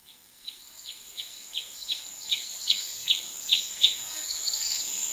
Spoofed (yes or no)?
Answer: yes